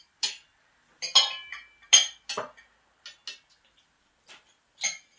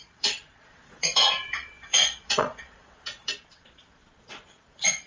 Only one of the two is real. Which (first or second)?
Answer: first